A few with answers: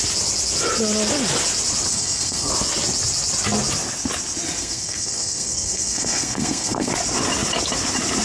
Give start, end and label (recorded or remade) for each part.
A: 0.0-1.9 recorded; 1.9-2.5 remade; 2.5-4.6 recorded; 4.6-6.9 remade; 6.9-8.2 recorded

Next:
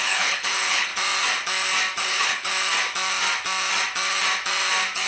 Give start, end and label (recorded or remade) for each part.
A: 0.0-0.9 remade; 0.9-2.0 recorded; 2.0-2.5 remade; 2.5-5.1 recorded